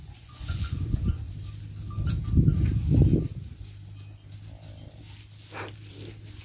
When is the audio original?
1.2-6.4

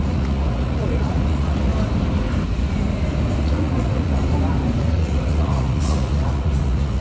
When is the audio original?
1.7-3.4; 4.2-4.8

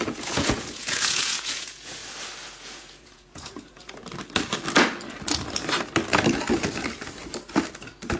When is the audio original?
2.0-2.5; 4.0-8.2